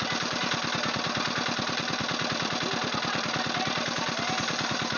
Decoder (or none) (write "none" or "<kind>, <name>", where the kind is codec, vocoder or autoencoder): vocoder, BigVGAN v2